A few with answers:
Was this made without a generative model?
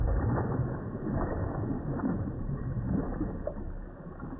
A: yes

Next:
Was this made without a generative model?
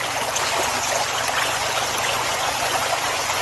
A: no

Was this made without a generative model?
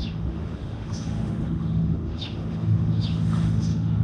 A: no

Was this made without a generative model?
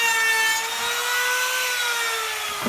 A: yes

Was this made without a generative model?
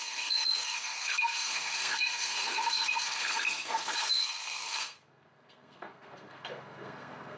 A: no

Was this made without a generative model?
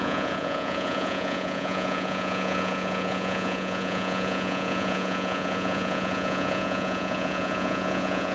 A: no